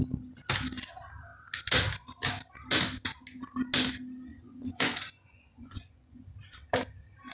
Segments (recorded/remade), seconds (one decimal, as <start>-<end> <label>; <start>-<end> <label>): 0.0-4.3 recorded; 4.3-6.2 remade; 6.2-7.3 recorded